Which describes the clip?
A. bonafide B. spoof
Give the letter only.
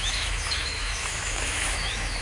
B